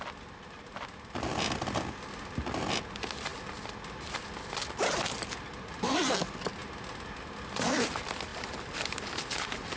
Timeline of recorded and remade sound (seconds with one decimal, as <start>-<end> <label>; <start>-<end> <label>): 0.0-9.8 recorded